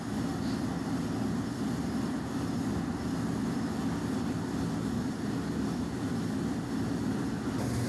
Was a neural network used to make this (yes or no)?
no